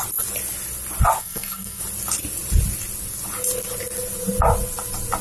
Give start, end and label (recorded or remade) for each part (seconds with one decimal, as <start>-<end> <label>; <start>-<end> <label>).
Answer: 0.0-1.2 recorded; 1.2-1.8 remade; 1.8-5.2 recorded